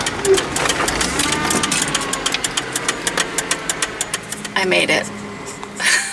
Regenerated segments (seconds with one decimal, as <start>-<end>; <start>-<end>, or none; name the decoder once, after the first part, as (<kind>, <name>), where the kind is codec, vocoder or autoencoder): none